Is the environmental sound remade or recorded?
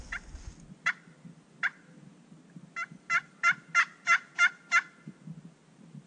recorded